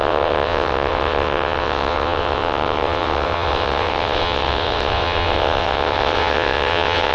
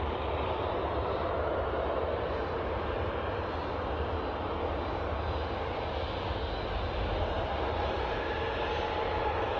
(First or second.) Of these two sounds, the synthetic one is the first